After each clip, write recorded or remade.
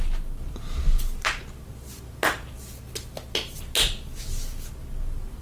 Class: recorded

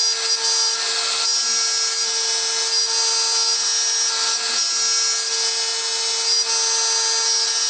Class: recorded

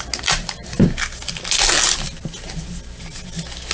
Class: recorded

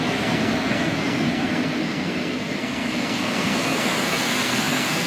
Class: remade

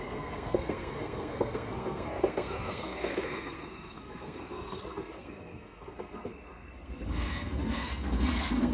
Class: remade